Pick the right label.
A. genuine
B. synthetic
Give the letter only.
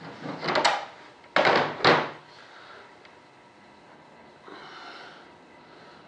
A